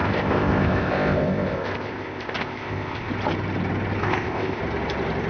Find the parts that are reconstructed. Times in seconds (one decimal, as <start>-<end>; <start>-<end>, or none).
0.0-3.1; 4.0-4.6